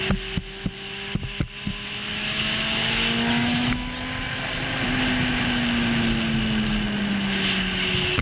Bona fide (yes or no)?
yes